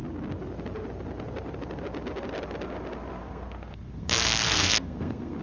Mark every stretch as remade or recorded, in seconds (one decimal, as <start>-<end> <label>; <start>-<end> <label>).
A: 0.0-3.2 recorded; 3.2-5.4 remade